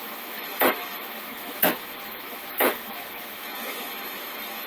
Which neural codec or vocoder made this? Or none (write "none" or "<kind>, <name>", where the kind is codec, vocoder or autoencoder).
autoencoder, DAC-VAE